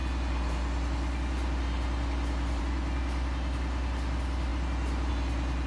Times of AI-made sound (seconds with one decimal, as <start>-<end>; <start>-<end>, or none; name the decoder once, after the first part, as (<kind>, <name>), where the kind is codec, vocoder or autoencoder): none